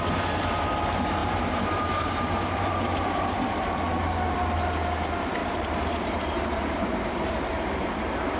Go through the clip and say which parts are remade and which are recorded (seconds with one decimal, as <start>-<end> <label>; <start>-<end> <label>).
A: 0.0-1.2 recorded; 1.2-3.5 remade; 3.5-5.4 recorded; 5.4-8.4 remade